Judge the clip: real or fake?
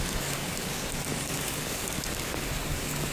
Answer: fake